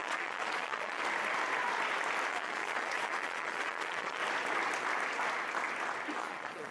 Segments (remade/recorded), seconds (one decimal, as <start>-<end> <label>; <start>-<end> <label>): 0.0-1.0 remade; 1.0-2.3 recorded; 2.3-4.2 remade; 4.2-6.2 recorded; 6.2-6.7 remade

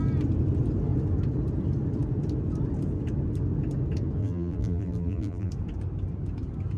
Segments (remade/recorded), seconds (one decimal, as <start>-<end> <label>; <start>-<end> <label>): 0.0-4.2 recorded; 4.2-5.5 remade; 5.5-6.8 recorded

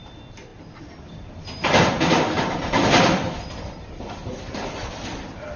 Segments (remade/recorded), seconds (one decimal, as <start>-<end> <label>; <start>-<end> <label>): 0.0-5.6 remade

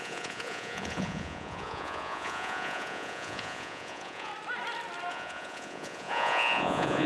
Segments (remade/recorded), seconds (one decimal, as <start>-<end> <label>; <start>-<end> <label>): 0.0-4.3 remade; 4.3-5.1 recorded; 5.1-7.1 remade

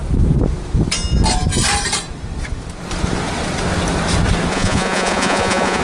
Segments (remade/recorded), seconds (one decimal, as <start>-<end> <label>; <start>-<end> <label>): 0.0-4.5 recorded; 4.5-5.8 remade